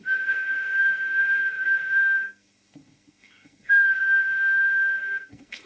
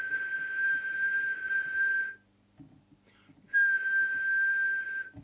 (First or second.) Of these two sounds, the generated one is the first